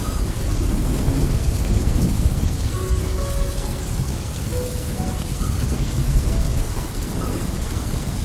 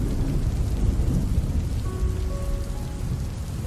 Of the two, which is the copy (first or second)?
first